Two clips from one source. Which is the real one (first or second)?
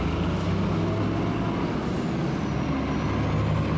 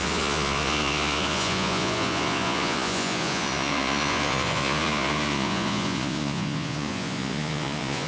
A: first